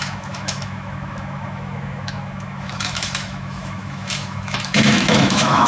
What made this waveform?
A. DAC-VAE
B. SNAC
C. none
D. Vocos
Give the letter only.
A